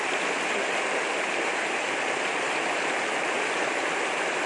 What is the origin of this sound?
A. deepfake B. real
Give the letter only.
A